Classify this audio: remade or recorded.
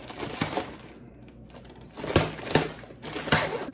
recorded